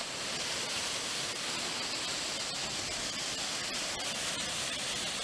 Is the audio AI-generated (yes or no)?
no